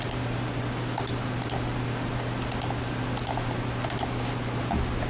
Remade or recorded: recorded